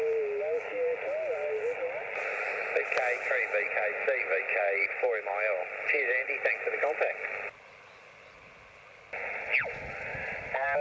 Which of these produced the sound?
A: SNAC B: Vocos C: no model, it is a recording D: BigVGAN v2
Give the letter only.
C